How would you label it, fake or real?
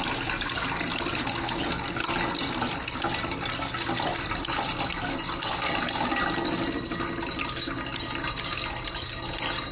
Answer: real